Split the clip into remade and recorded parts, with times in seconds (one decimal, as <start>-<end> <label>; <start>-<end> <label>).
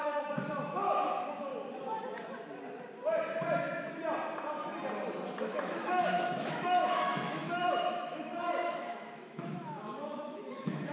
0.0-1.5 remade; 1.5-5.4 recorded; 5.4-10.9 remade